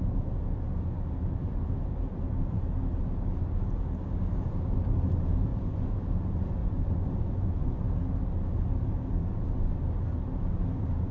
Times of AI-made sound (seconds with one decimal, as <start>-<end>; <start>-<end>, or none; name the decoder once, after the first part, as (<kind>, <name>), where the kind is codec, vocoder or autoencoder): 5.5-6.0 (vocoder, Vocos); 6.6-7.8